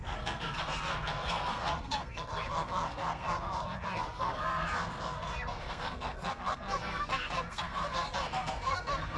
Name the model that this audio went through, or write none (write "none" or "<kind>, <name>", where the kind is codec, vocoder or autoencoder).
codec, SNAC